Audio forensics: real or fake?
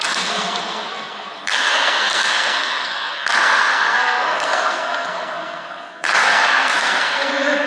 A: fake